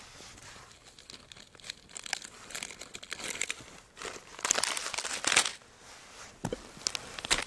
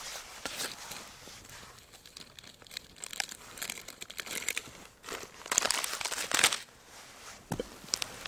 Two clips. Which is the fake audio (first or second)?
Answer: second